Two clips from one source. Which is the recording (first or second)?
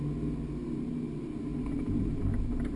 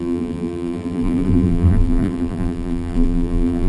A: first